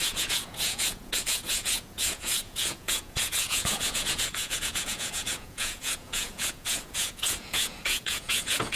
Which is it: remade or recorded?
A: remade